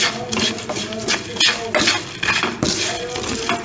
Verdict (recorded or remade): recorded